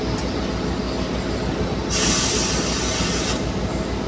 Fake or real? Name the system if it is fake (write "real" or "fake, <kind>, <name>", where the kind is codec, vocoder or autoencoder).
real